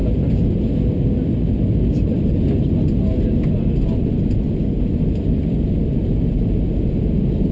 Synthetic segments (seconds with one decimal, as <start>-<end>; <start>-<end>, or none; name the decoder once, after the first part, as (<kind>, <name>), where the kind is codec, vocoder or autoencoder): none